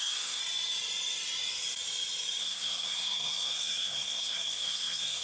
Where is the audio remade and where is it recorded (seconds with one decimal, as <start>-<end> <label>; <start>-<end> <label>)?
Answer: 0.0-0.4 remade; 0.4-2.4 recorded; 2.4-5.2 remade